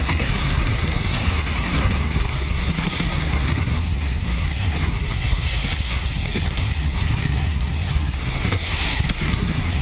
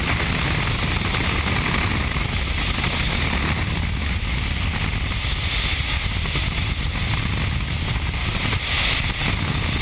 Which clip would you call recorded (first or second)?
second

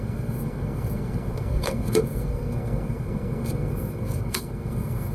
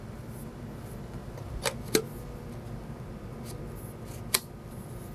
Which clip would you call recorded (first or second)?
second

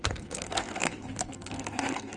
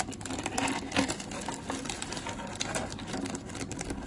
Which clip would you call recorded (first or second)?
second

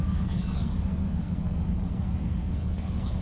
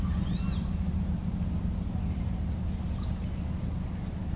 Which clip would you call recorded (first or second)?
second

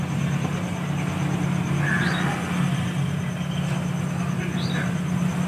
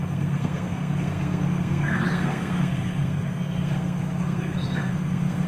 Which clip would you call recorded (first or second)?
first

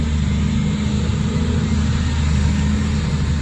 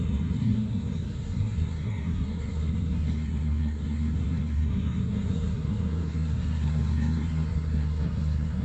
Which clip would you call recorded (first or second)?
first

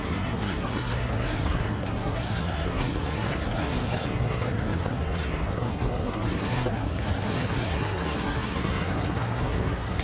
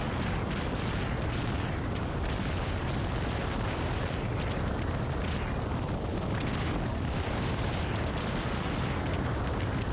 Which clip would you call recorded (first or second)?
second